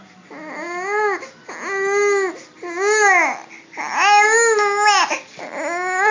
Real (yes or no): yes